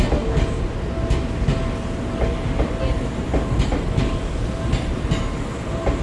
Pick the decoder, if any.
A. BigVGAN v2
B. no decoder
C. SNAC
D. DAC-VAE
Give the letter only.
B